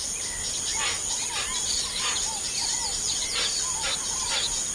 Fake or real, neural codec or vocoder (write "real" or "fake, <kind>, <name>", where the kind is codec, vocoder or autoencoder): real